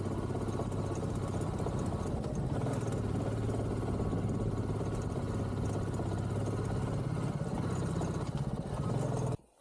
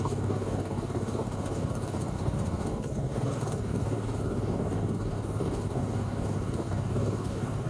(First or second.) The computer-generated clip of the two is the second